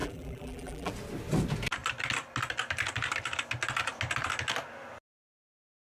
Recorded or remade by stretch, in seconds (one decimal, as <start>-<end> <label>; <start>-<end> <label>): 0.0-0.9 remade; 0.9-5.9 recorded